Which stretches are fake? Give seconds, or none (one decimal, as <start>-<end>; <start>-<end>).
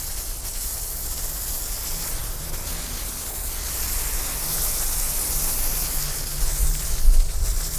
none